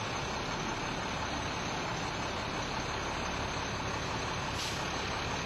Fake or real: real